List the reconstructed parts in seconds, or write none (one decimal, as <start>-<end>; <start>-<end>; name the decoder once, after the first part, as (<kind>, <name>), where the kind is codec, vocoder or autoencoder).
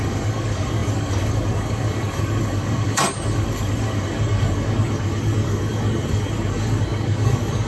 0.0-7.7 (codec, DAC)